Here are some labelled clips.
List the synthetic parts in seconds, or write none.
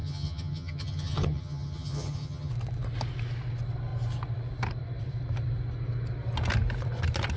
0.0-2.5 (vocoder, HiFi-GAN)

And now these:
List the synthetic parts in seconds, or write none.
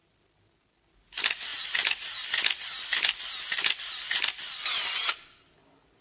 none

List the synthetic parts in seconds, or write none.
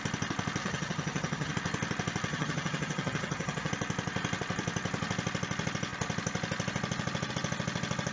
0.6-1.5 (vocoder, HiFi-GAN); 2.3-3.7